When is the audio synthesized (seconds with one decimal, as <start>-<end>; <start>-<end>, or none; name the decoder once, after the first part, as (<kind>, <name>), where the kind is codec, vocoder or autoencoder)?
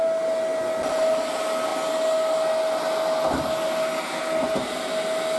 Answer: none